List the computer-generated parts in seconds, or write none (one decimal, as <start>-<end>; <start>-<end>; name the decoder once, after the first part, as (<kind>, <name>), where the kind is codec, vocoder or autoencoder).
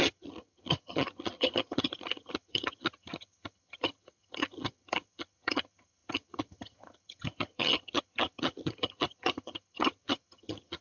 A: 0.0-10.8 (vocoder, HiFi-GAN)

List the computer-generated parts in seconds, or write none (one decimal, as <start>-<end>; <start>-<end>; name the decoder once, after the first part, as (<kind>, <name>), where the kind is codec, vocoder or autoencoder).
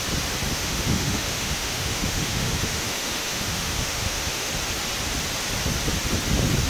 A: 0.5-4.5 (autoencoder, DAC-VAE)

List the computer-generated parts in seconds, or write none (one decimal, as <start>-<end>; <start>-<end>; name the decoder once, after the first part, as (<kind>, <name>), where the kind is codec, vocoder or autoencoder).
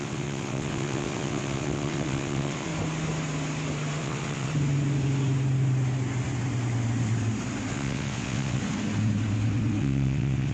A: 0.0-2.7 (vocoder, WaveNeXt); 4.0-4.5; 7.7-8.6; 9.8-10.5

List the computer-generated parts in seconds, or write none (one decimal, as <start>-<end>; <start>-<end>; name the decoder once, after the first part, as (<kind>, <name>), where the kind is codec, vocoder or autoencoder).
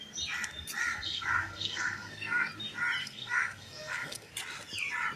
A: 0.8-2.5 (codec, SNAC); 3.0-4.3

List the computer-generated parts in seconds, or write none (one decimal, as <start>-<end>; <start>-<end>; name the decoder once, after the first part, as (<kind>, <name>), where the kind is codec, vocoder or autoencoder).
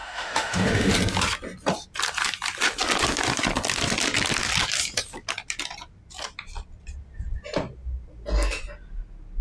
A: 0.0-0.9 (autoencoder, DAC-VAE)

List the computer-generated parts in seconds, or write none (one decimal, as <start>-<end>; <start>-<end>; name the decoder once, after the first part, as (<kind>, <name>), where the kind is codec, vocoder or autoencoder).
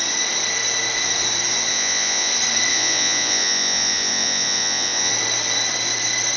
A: 1.7-2.3 (vocoder, Vocos); 2.7-5.1